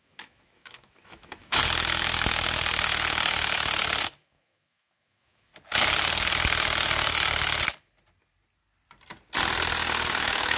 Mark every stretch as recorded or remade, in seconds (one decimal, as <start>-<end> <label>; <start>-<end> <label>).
0.0-1.6 remade; 1.6-4.2 recorded; 4.2-5.5 remade; 5.5-10.2 recorded; 10.2-10.6 remade